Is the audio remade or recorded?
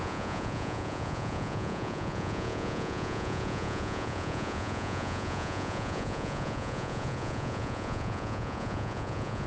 remade